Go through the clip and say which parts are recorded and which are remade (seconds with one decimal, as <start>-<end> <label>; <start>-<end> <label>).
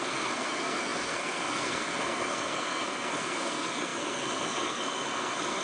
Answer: 0.0-5.6 remade